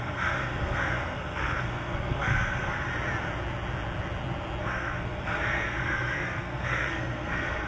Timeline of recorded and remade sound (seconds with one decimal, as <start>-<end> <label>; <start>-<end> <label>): 0.0-2.9 remade; 2.9-4.6 recorded; 4.6-7.7 remade

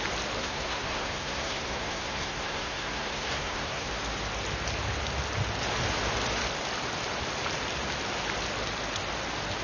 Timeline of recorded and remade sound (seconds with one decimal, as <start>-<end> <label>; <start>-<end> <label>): 0.0-0.4 recorded; 0.4-3.9 remade; 3.9-9.6 recorded

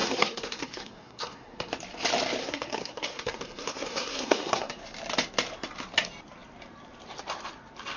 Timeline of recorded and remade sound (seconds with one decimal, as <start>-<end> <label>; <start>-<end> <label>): 0.0-1.7 remade; 1.7-2.4 recorded; 2.4-4.8 remade; 4.8-8.0 recorded